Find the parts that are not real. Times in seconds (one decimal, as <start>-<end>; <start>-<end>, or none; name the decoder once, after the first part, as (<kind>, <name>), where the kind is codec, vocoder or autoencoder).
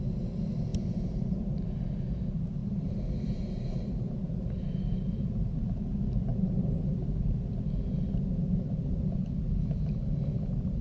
2.6-5.7 (vocoder, BigVGAN v2); 6.3-6.8